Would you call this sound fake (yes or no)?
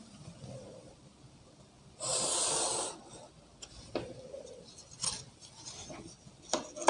no